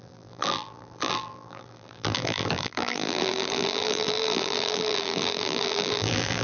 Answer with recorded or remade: remade